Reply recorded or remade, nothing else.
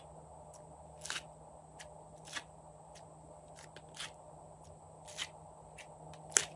recorded